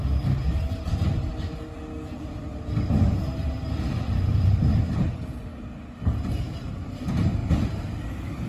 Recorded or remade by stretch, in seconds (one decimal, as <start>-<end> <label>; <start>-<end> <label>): 0.0-3.7 recorded; 3.7-5.5 remade; 5.5-6.0 recorded; 6.0-8.5 remade

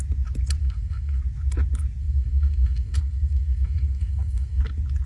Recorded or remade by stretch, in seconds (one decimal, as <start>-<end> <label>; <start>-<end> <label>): 0.0-0.6 recorded; 0.6-1.2 remade; 1.2-2.0 recorded; 2.0-4.6 remade; 4.6-5.1 recorded

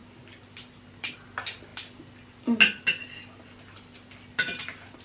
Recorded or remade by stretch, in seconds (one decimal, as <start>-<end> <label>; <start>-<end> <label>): 0.0-5.0 recorded

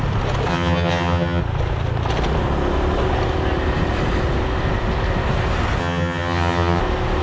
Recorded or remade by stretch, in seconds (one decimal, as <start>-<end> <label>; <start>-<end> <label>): 0.0-0.5 recorded; 0.5-1.4 remade; 1.4-5.8 recorded; 5.8-6.8 remade; 6.8-7.2 recorded

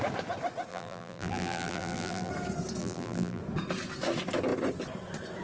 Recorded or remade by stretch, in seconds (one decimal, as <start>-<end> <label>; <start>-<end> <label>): 0.0-0.7 recorded; 0.7-2.3 remade; 2.3-2.8 recorded; 2.8-3.4 remade; 3.4-5.4 recorded